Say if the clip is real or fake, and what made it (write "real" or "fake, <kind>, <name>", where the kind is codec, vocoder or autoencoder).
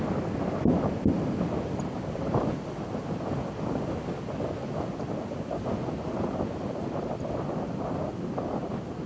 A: real